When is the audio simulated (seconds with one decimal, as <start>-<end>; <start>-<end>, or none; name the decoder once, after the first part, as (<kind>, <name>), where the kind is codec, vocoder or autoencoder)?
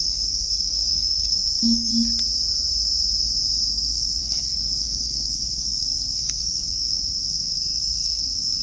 0.0-1.9 (codec, SNAC); 3.7-8.6